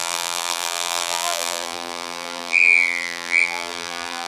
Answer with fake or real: fake